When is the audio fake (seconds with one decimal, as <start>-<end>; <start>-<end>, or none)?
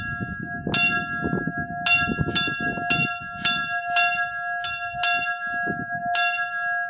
none